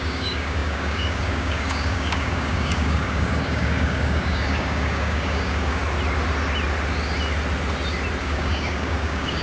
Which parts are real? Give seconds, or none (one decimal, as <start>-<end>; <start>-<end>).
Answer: 5.8-8.2